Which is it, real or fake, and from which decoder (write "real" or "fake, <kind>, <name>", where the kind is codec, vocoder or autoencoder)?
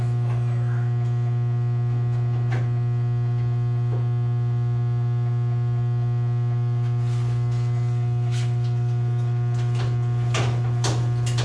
real